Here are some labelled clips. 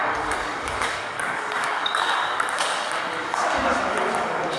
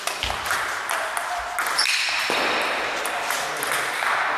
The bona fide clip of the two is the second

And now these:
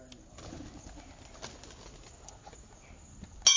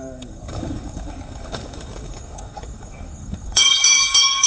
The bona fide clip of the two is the first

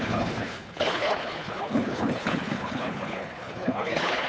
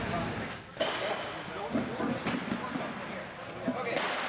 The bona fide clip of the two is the second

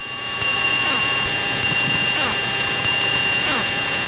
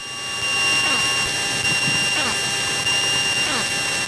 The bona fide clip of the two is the second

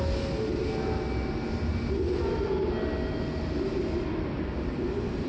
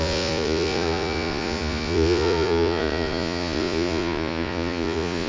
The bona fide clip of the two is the first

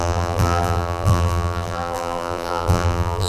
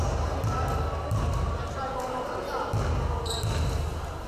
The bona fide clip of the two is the second